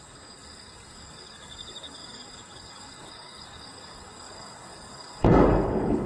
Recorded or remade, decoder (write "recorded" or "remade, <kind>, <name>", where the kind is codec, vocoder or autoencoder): remade, codec, DAC